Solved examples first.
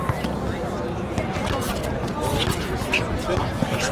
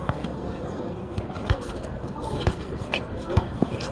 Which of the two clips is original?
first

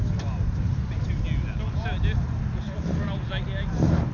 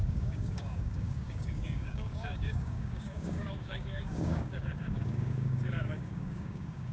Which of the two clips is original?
first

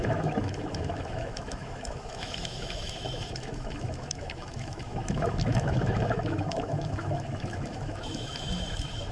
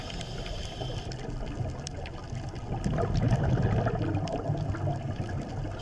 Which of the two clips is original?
second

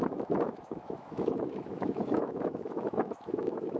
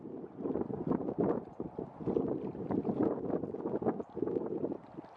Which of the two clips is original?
second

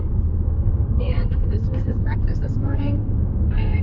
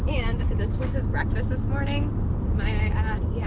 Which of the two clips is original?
second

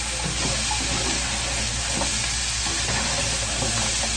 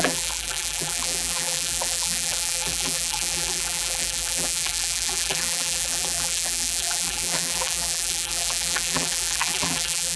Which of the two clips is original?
first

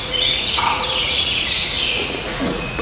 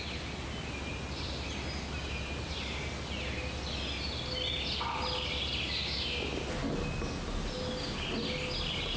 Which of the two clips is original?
second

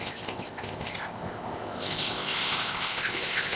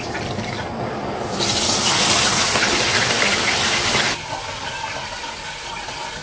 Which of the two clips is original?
second